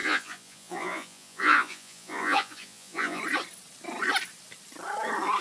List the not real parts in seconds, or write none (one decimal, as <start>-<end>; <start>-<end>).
0.0-3.2